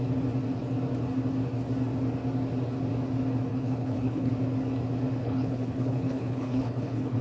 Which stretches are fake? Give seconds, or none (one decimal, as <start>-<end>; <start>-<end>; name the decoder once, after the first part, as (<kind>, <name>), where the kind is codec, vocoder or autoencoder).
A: 3.5-4.3 (codec, HILCodec); 5.2-7.2